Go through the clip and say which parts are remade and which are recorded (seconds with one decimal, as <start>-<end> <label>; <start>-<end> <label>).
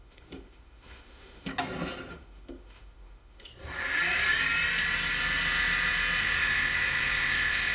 0.0-1.5 remade; 1.5-2.1 recorded; 2.1-3.5 remade; 3.5-6.2 recorded; 6.2-7.7 remade